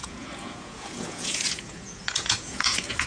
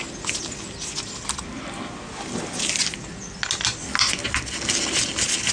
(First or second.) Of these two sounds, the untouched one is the second